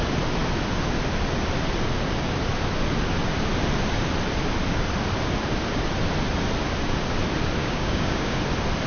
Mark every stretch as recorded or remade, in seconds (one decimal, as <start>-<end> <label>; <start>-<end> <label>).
0.0-7.6 recorded; 7.6-8.4 remade; 8.4-8.9 recorded